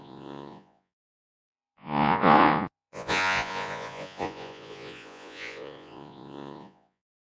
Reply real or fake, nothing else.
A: fake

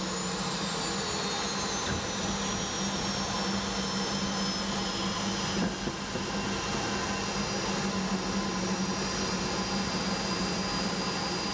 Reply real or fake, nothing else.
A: real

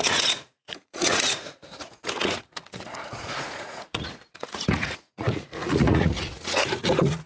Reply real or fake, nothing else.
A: fake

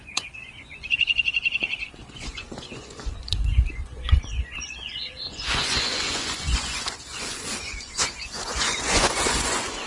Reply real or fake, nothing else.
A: fake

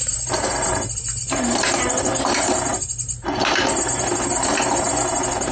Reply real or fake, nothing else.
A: fake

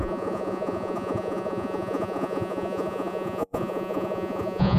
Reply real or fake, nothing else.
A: fake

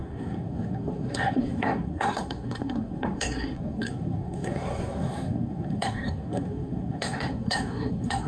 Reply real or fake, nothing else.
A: fake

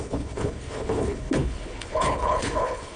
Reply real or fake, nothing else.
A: fake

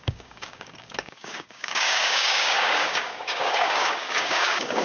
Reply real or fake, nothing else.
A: fake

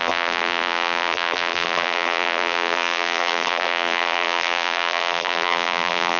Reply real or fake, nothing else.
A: fake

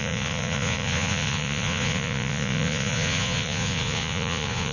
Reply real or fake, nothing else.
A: fake